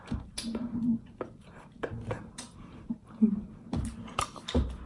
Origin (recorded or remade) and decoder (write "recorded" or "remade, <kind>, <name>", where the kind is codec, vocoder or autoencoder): recorded